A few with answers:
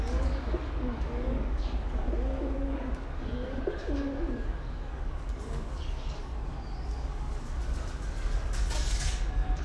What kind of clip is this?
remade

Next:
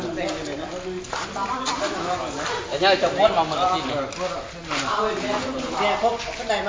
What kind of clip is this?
recorded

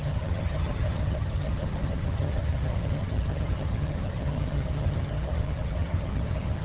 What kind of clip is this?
remade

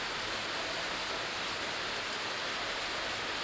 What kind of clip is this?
recorded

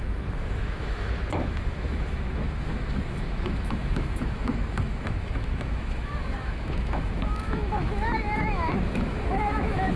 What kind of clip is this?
remade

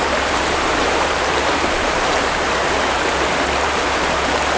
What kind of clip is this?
remade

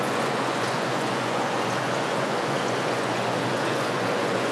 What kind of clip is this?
remade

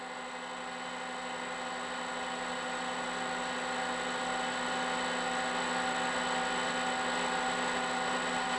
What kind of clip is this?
recorded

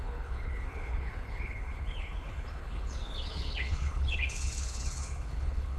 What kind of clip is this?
remade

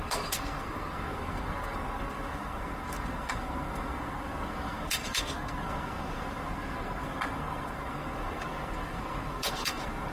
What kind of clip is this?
remade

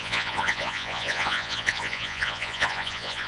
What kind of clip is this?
remade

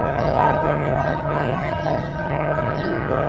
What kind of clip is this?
remade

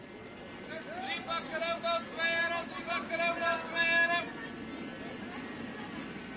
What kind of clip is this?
recorded